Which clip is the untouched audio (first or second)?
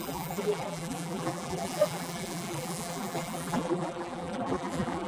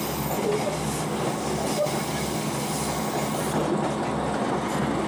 second